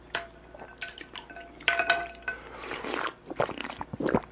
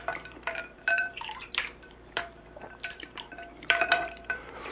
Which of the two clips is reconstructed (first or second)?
second